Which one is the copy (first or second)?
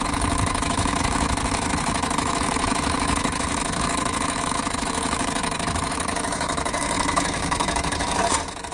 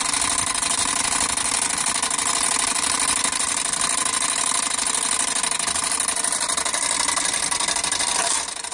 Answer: first